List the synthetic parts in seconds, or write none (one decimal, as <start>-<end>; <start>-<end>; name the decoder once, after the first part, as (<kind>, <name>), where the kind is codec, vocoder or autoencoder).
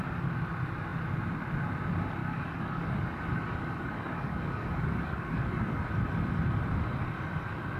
2.2-5.8 (codec, DAC)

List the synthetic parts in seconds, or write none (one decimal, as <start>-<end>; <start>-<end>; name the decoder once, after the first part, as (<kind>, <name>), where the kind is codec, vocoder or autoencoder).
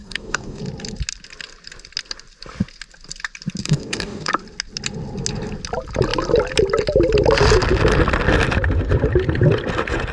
0.0-0.6 (codec, DAC); 3.6-4.3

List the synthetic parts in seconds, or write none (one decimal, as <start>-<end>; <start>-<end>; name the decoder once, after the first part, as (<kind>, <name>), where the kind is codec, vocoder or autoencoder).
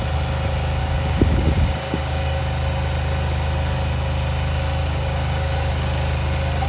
0.8-2.4 (codec, DAC); 4.8-5.7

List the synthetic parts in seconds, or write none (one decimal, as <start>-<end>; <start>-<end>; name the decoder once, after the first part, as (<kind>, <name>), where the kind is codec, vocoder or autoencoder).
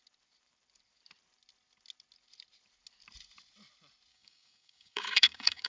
4.1-5.7 (codec, DAC)